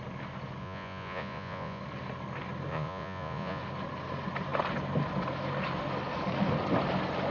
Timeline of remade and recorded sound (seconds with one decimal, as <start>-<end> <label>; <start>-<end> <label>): 0.0-0.6 recorded; 0.6-1.8 remade; 1.8-2.7 recorded; 2.7-3.6 remade; 3.6-7.3 recorded